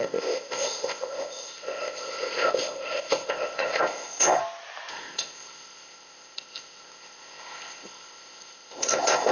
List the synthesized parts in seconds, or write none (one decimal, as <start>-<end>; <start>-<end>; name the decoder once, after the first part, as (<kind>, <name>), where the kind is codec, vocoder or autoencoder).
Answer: 0.0-4.4 (codec, ZipCodec); 4.9-9.3